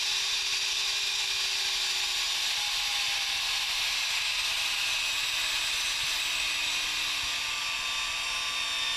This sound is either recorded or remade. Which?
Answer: recorded